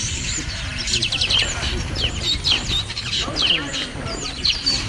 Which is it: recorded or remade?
remade